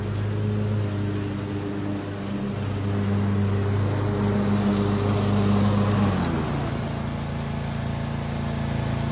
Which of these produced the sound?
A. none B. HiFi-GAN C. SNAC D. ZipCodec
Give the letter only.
A